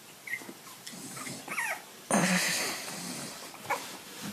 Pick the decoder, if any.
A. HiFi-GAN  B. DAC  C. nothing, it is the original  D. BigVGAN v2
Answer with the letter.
C